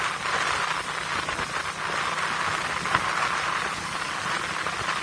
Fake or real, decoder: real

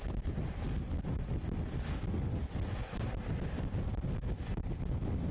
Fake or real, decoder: real